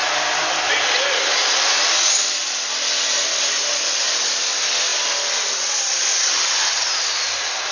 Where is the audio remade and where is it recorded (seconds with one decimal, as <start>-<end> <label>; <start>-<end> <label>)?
0.0-7.7 recorded